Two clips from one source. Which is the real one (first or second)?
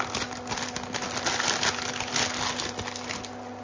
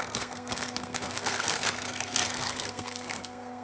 first